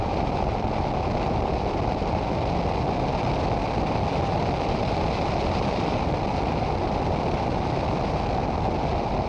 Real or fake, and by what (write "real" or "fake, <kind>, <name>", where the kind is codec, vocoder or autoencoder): real